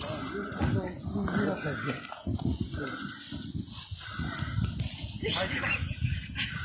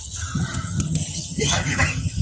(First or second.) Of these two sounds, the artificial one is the second